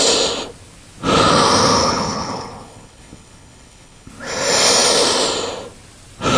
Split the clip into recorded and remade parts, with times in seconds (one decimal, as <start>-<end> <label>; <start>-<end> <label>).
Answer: 0.0-1.8 recorded; 1.8-4.1 remade; 4.1-6.4 recorded